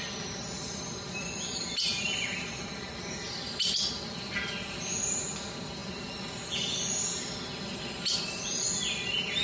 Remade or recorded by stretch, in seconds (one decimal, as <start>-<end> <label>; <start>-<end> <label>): 0.0-9.4 recorded